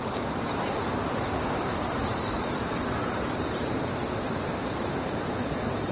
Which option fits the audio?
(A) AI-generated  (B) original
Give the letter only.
A